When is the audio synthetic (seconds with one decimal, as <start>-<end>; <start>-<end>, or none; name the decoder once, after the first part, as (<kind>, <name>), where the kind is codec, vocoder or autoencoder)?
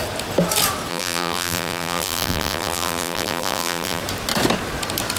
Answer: 0.9-4.0 (vocoder, BigVGAN v2)